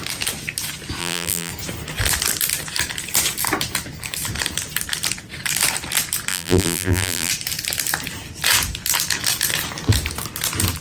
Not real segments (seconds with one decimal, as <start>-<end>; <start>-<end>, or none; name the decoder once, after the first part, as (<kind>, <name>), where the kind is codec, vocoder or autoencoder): 1.0-1.5 (vocoder, BigVGAN v2); 6.3-7.3